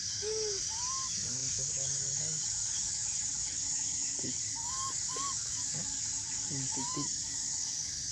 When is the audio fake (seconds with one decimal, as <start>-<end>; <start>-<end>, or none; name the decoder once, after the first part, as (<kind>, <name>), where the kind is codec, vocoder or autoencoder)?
0.0-8.1 (codec, DAC)